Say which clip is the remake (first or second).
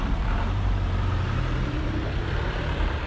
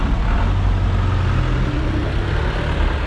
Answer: first